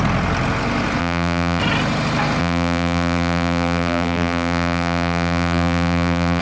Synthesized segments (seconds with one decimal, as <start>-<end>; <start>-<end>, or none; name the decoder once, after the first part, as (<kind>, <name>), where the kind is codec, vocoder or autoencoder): 1.0-1.6 (vocoder, BigVGAN v2); 2.4-6.4